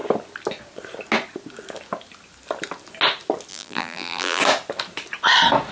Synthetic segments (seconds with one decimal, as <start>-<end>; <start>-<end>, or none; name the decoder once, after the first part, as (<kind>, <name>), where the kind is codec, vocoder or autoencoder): 3.5-4.4 (vocoder, BigVGAN v2)